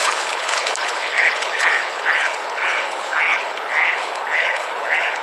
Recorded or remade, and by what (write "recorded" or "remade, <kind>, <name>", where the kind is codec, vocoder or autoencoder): remade, codec, HILCodec